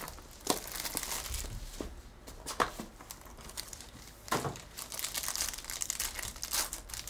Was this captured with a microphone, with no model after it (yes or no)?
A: yes